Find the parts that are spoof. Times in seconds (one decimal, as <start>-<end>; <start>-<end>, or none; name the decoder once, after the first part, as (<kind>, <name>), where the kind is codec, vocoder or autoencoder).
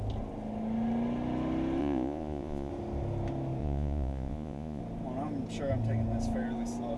1.8-2.7 (vocoder, Vocos); 3.6-4.8